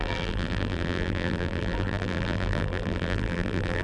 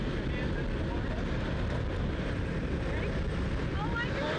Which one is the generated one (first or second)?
first